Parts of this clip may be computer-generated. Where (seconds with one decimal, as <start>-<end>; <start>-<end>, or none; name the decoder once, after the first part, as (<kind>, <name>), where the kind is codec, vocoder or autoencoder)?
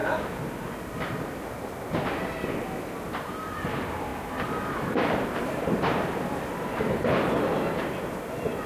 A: 4.1-7.0 (vocoder, BigVGAN v2)